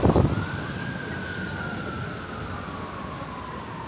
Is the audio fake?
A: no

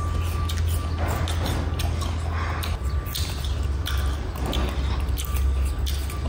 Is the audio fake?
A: no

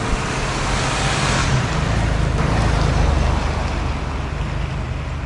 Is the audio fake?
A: no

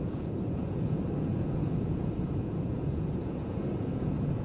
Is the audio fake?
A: yes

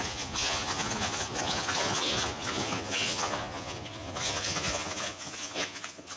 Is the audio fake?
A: yes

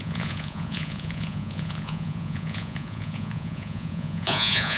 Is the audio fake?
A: yes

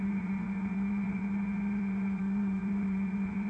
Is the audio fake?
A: yes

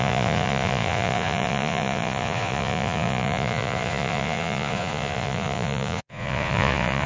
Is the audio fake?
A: yes